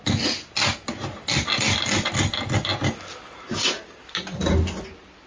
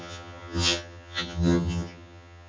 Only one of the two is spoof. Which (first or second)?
second